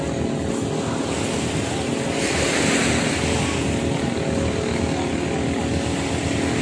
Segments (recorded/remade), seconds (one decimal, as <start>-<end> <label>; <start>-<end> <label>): 0.0-6.6 recorded